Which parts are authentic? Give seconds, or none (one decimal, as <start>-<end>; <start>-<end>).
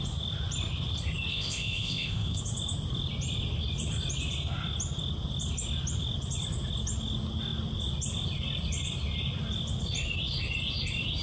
0.0-1.3; 2.4-11.2